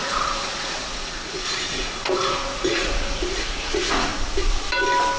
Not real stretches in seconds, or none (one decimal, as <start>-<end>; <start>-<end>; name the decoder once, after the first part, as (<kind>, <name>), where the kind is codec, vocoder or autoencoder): 0.0-4.1 (vocoder, Vocos)